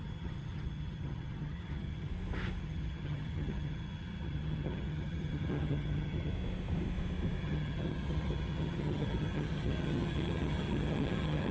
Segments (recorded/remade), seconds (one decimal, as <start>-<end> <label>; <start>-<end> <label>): 0.0-2.1 remade; 2.1-2.6 recorded; 2.6-6.3 remade; 6.3-7.4 recorded; 7.4-11.5 remade